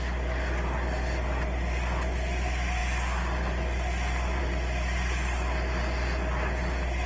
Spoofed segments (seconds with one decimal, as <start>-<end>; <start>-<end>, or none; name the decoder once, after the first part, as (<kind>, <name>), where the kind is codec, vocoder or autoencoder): none